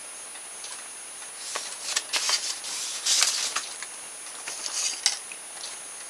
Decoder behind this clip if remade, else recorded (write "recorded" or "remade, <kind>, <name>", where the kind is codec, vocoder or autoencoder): recorded